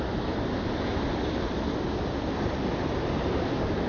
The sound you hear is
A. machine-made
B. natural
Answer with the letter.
B